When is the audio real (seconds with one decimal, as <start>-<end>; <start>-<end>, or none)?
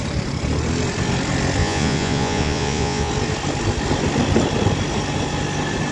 0.0-1.6; 3.1-5.9